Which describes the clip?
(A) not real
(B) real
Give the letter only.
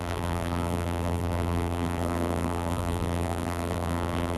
A